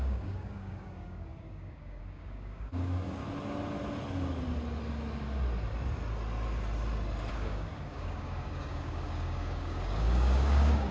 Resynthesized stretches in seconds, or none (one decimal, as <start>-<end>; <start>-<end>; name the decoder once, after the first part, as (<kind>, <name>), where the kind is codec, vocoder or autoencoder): 0.0-3.2 (codec, DAC); 7.3-10.9